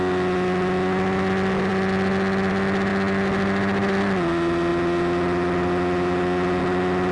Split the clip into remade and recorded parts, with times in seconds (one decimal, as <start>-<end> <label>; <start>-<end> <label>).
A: 0.0-7.1 recorded